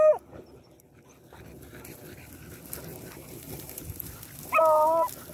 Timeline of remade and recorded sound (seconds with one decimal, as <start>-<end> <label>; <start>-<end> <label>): 0.0-2.9 recorded; 2.9-3.8 remade; 3.8-5.3 recorded